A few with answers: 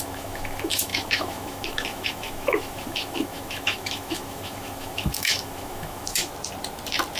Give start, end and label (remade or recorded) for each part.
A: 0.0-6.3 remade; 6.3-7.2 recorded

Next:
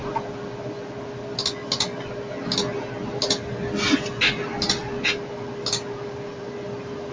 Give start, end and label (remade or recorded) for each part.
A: 0.0-7.1 recorded

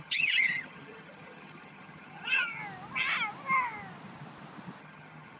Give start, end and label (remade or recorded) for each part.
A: 0.0-2.6 remade; 2.6-4.8 recorded; 4.8-5.4 remade

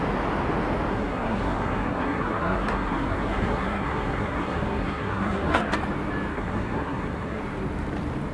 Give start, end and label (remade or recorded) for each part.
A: 0.0-0.9 recorded; 0.9-5.7 remade; 5.7-6.3 recorded; 6.3-7.4 remade; 7.4-8.3 recorded

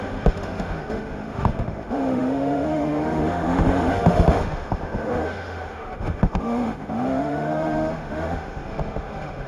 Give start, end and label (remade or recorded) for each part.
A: 0.0-9.5 remade